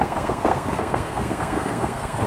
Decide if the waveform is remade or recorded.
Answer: remade